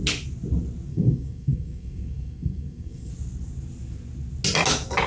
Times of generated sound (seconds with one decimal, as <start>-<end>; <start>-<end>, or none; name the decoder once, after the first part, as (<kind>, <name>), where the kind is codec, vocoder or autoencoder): 0.9-3.1 (codec, SNAC)

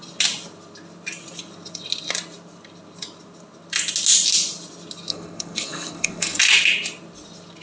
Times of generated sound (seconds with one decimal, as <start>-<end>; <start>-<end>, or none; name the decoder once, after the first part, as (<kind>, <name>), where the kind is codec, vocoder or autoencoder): 5.1-6.4 (codec, SNAC)

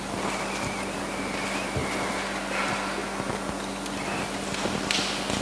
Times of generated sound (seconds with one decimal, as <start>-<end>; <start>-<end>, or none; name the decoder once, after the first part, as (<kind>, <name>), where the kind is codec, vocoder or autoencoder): none

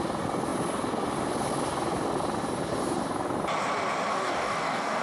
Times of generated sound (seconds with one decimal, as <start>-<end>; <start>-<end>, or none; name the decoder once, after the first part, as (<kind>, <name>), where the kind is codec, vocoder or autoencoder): 4.1-5.0 (codec, DAC)

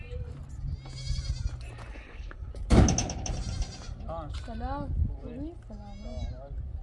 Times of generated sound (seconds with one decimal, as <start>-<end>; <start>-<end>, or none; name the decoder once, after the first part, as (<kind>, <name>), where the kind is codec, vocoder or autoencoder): 1.9-2.5 (codec, HILCodec)

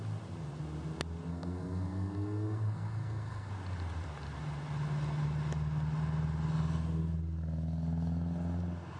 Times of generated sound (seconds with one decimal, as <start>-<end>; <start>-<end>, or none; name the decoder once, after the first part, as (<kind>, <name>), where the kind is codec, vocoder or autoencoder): 1.3-3.5 (codec, SNAC)